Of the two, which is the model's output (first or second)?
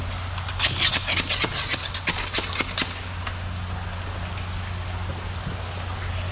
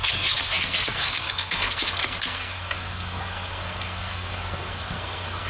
second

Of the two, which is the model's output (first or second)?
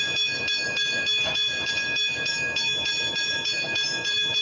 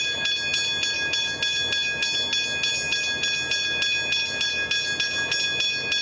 first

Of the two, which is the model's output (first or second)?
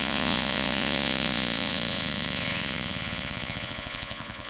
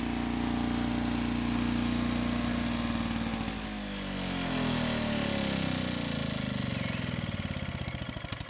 first